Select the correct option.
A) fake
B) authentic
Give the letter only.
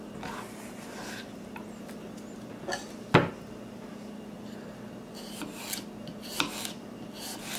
B